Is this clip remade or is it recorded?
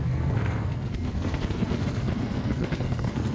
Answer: remade